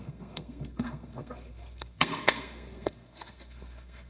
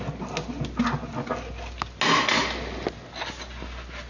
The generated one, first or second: first